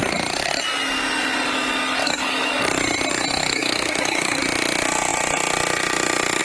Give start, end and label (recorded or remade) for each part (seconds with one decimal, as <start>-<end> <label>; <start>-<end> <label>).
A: 0.0-2.0 recorded; 2.0-2.5 remade; 2.5-3.4 recorded; 3.4-4.4 remade; 4.4-6.4 recorded